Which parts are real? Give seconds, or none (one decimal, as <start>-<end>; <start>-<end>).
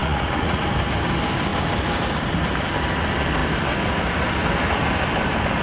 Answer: 0.6-5.6